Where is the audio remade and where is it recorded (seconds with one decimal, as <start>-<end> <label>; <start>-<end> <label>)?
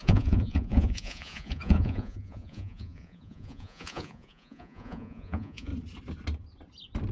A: 0.0-5.7 remade; 5.7-7.1 recorded